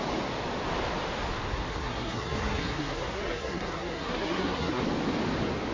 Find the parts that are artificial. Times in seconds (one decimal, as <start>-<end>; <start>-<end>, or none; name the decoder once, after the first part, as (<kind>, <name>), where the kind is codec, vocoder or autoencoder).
1.7-4.8 (codec, SNAC)